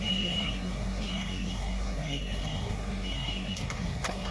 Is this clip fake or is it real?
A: fake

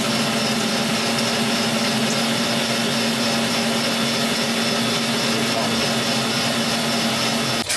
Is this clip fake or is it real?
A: real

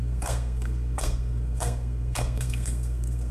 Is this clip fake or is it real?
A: fake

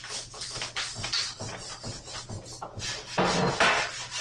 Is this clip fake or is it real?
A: real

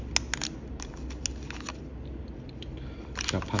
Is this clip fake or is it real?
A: real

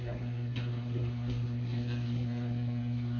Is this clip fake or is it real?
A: fake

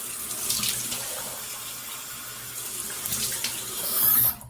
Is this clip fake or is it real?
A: real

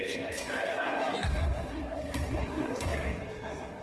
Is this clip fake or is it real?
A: fake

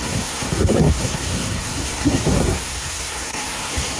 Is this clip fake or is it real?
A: fake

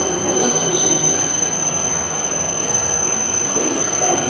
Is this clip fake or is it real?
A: fake